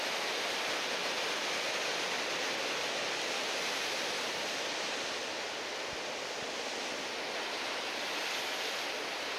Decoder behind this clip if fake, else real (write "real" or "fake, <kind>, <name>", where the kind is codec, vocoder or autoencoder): real